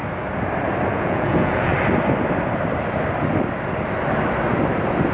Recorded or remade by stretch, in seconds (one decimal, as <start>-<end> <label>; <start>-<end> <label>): 0.0-0.9 recorded; 0.9-1.7 remade; 1.7-5.1 recorded